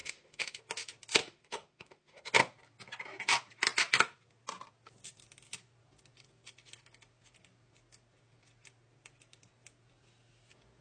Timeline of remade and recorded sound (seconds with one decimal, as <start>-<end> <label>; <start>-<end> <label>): 0.0-0.6 remade; 0.6-1.2 recorded; 1.2-2.3 remade; 2.3-10.8 recorded